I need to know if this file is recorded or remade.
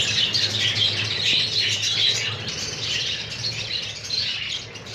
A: recorded